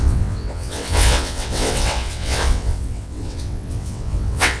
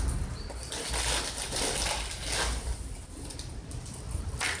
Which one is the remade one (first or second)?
first